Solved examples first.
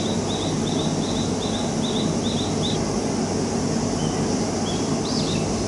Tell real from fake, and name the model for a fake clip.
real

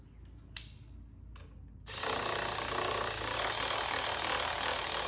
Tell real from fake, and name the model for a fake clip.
real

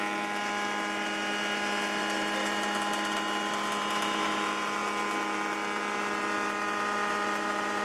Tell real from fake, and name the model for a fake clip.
real